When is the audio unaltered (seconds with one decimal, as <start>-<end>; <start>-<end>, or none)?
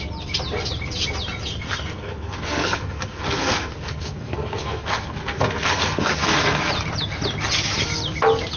0.0-1.5; 6.7-8.6